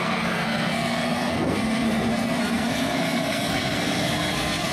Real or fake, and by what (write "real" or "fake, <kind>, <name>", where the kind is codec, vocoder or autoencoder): fake, codec, SNAC